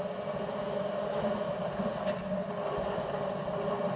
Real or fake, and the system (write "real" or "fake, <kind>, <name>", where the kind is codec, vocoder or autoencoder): real